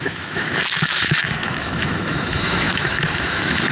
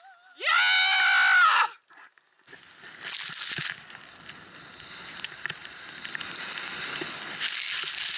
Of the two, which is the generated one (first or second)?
first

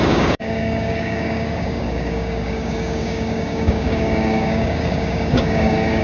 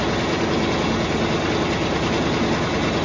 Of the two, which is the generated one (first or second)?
first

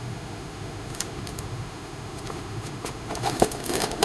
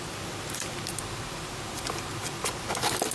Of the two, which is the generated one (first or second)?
first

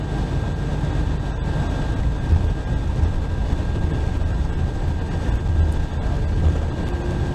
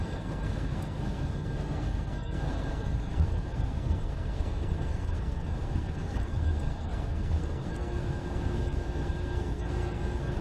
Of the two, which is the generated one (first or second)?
second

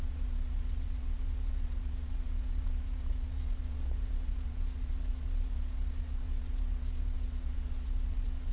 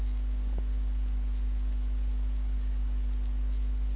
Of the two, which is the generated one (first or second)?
first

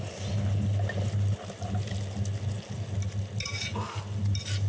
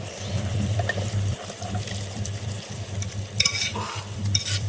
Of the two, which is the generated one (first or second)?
second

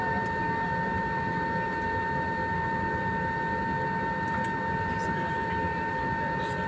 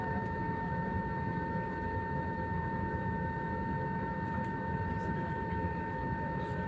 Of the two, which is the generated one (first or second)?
second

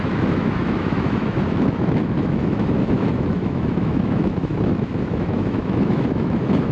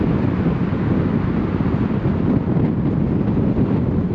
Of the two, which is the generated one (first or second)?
first